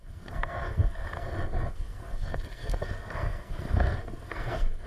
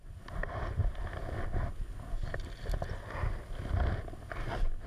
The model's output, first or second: first